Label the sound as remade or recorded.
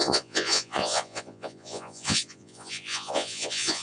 remade